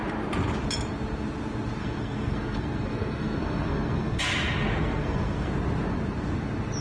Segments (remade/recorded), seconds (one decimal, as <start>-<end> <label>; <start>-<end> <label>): 0.0-1.8 recorded; 1.8-4.2 remade; 4.2-4.8 recorded; 4.8-5.5 remade; 5.5-6.8 recorded